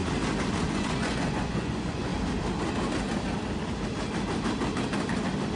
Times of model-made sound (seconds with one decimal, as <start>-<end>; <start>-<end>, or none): 0.7-2.1